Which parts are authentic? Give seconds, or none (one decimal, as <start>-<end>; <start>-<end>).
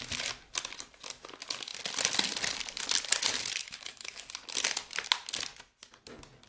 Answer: 0.0-3.6; 4.2-6.5